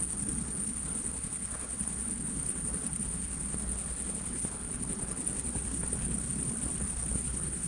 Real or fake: fake